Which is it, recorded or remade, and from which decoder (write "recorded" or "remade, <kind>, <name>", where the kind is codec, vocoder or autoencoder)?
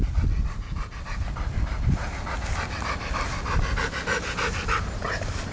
recorded